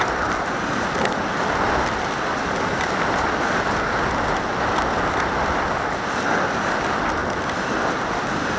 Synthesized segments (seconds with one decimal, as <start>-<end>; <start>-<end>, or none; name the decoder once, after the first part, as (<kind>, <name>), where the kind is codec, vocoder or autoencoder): none